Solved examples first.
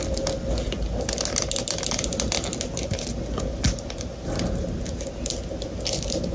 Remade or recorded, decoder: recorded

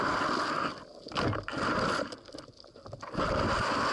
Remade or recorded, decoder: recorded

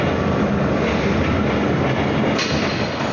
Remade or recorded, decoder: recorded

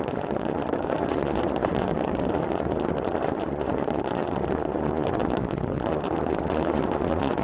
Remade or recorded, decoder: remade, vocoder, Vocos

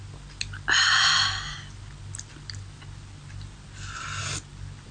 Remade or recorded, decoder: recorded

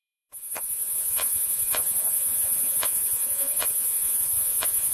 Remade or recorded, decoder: remade, vocoder, Vocos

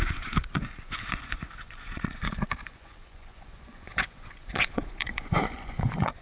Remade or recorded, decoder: remade, vocoder, Vocos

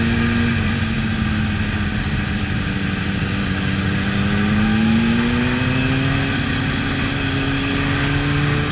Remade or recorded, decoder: recorded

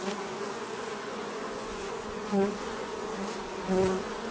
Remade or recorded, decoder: remade, vocoder, Vocos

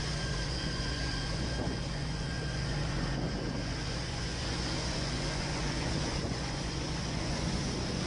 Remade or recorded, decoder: remade, vocoder, Vocos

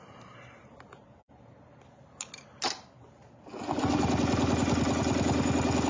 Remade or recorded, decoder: recorded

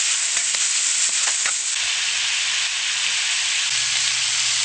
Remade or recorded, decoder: recorded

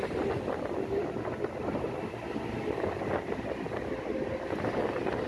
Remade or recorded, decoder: recorded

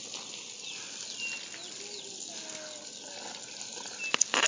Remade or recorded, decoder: recorded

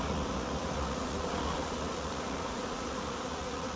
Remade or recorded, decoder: remade, vocoder, Vocos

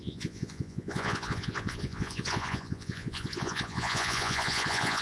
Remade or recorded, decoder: remade, vocoder, Vocos